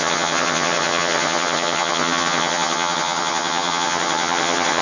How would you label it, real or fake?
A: fake